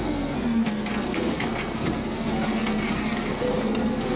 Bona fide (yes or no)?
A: no